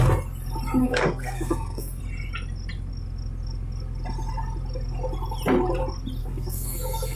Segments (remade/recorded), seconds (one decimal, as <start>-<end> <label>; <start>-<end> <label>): 0.0-0.8 recorded; 0.8-2.0 remade; 2.0-6.2 recorded; 6.2-7.2 remade